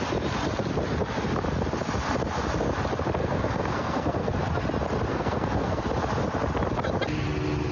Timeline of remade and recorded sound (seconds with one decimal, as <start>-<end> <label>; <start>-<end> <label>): 0.0-3.2 recorded; 3.2-4.3 remade; 4.3-5.1 recorded; 5.1-5.8 remade; 5.8-7.7 recorded